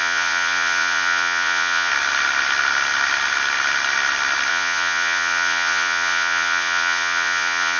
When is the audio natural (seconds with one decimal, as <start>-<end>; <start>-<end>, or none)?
1.9-4.5